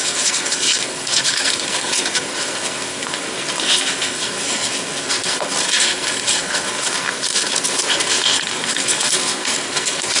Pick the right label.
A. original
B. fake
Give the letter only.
B